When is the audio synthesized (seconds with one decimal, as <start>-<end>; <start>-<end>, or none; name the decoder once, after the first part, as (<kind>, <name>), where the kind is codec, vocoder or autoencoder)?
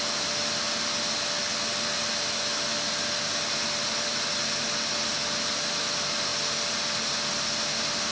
none